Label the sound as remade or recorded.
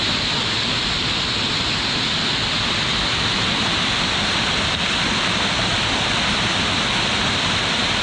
recorded